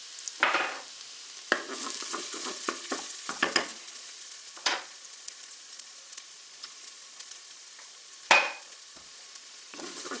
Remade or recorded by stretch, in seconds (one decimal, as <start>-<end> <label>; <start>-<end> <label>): 0.0-2.1 recorded; 2.1-10.2 remade